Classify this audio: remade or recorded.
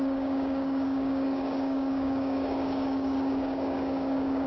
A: remade